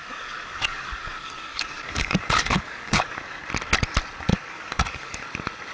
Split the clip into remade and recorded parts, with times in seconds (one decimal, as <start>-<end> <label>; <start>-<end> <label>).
0.0-3.4 remade; 3.4-4.3 recorded; 4.3-5.2 remade; 5.2-5.7 recorded